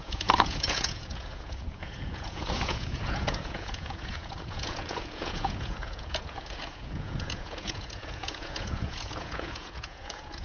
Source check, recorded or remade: remade